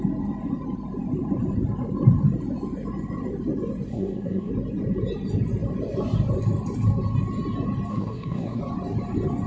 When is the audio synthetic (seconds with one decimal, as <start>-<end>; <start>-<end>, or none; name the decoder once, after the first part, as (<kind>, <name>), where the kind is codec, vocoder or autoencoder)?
3.9-4.5 (codec, SNAC); 7.9-8.6